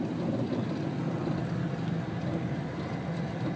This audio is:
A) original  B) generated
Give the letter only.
A